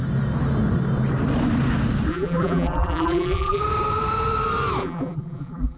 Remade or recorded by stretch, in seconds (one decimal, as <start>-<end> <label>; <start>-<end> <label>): 0.0-2.1 recorded; 2.1-3.6 remade; 3.6-4.8 recorded; 4.8-5.8 remade